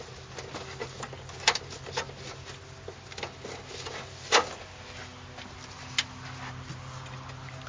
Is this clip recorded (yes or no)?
yes